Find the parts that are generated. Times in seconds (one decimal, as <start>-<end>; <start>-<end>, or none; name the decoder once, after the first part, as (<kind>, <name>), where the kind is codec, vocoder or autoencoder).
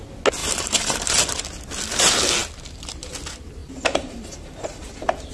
0.4-1.1 (vocoder, BigVGAN v2); 3.6-5.3